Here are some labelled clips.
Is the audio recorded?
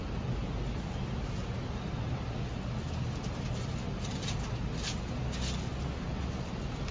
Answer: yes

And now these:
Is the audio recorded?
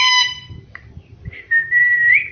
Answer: no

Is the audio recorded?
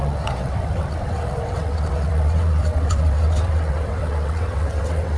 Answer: no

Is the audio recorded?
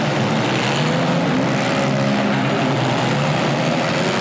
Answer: yes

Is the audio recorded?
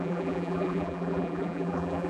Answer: no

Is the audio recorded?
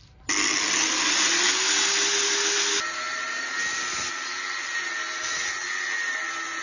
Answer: yes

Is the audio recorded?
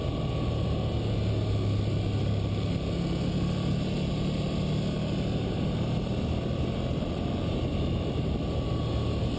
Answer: yes